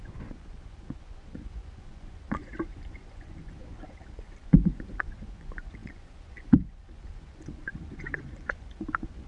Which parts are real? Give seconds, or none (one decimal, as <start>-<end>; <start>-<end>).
none